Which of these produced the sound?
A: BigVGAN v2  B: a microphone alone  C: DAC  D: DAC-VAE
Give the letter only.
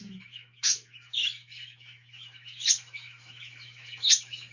D